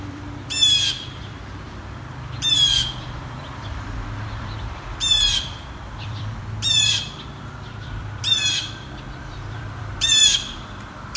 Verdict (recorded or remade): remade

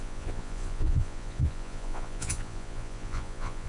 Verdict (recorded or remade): remade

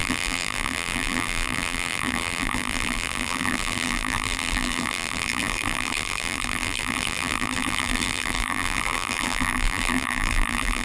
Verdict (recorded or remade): remade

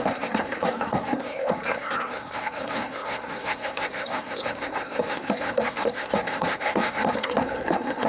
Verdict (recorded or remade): remade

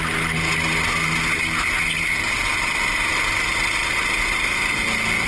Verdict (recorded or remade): recorded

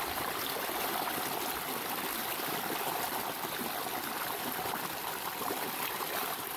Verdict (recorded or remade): recorded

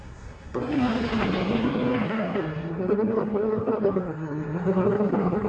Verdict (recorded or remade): remade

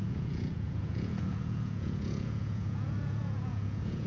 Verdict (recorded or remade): remade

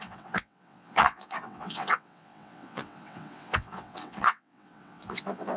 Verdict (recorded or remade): remade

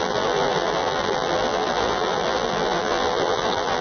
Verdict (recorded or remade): remade